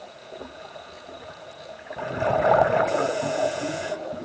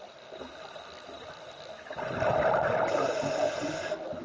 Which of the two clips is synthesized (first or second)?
first